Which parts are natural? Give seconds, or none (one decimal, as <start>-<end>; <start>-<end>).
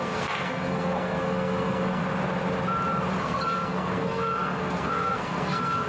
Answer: 2.0-3.2